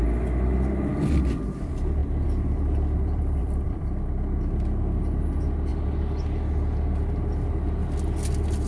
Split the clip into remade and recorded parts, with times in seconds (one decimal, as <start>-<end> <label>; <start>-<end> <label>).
0.0-2.0 recorded; 2.0-3.9 remade; 3.9-8.7 recorded